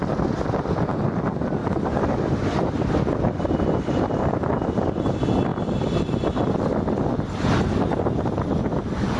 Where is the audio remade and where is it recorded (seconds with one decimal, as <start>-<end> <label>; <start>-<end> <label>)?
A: 0.0-1.6 recorded; 1.6-2.2 remade; 2.2-9.2 recorded